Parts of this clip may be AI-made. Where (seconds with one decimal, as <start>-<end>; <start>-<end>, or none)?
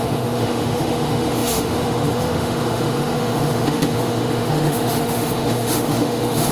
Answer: 0.0-6.5